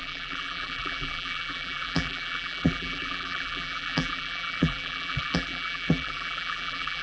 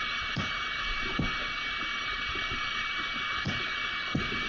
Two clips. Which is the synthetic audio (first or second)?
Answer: first